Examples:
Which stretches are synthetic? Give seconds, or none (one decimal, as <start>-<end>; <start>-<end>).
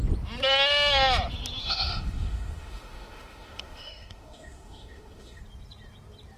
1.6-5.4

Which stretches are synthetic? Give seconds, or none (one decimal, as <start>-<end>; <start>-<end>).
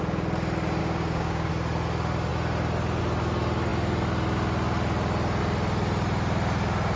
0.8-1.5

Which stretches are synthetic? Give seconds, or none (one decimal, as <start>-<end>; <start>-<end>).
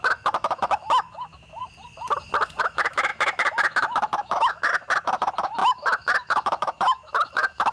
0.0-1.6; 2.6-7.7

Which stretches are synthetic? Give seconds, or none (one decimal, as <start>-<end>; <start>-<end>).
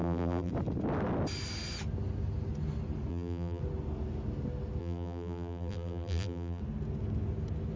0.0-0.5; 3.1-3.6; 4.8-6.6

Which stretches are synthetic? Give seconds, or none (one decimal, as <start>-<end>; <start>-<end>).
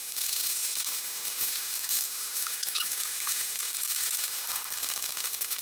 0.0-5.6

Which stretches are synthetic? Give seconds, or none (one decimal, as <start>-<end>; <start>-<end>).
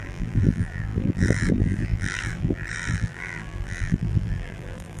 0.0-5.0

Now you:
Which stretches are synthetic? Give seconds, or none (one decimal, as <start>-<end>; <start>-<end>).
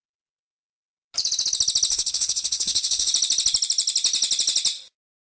1.9-3.1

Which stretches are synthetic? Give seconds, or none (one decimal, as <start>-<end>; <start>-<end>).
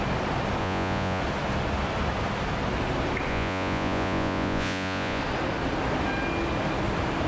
0.6-1.2; 3.3-5.2